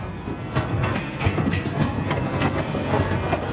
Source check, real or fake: fake